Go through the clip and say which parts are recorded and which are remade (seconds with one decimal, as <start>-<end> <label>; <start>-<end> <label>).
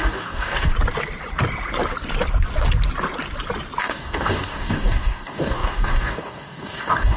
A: 0.0-0.7 remade; 0.7-3.8 recorded; 3.8-7.2 remade